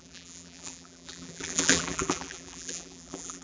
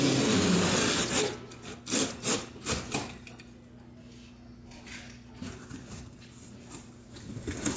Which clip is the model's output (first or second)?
first